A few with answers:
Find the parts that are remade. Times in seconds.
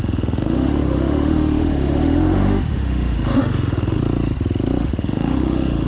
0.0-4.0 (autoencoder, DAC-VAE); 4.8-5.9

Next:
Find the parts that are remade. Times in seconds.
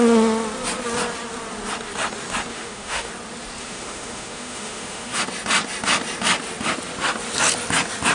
2.5-3.1 (autoencoder, DAC-VAE); 3.6-5.2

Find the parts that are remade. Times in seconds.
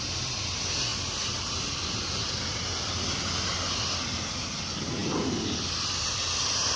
0.0-0.9 (vocoder, BigVGAN v2); 4.6-6.8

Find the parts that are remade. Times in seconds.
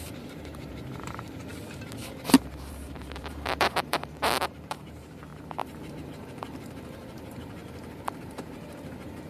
0.0-1.5 (vocoder, BigVGAN v2); 2.7-5.3; 5.9-7.6; 8.2-9.3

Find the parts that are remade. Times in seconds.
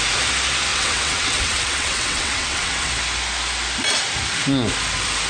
0.7-2.9 (vocoder, WaveNeXt)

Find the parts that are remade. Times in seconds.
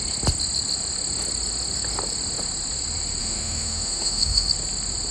3.2-4.5 (autoencoder, DAC-VAE)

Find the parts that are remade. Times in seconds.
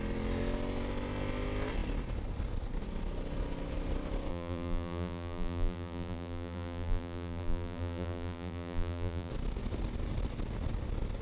4.3-9.3 (vocoder, BigVGAN v2)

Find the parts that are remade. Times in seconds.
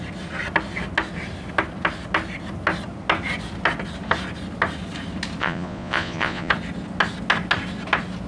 5.4-6.5 (vocoder, Vocos)